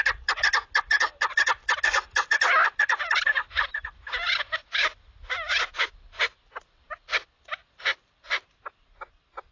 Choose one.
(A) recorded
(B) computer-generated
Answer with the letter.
A